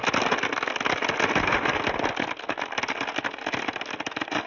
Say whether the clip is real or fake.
real